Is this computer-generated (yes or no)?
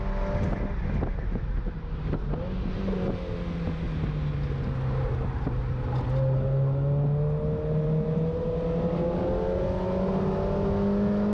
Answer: no